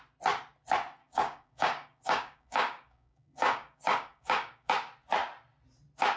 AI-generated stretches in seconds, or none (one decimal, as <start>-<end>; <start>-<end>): 1.0-4.7